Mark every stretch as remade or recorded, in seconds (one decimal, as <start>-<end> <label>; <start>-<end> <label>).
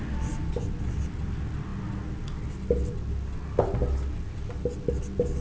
0.0-5.4 recorded